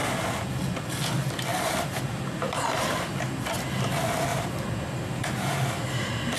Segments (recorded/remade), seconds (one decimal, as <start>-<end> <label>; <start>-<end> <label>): 0.0-1.5 recorded; 1.5-3.2 remade; 3.2-4.3 recorded; 4.3-5.8 remade; 5.8-6.4 recorded